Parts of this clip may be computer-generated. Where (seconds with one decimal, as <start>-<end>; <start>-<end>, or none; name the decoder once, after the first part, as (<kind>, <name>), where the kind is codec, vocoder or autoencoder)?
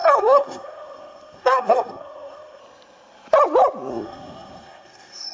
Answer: 0.0-2.6 (codec, SNAC); 3.9-5.3